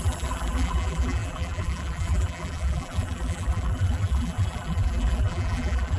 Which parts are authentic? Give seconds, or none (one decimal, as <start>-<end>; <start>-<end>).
none